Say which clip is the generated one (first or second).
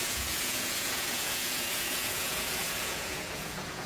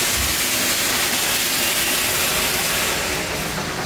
first